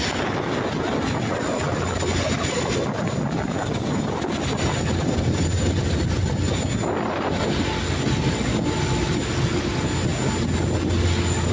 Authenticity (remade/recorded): recorded